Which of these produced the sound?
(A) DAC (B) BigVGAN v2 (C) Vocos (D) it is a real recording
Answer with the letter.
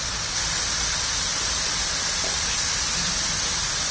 D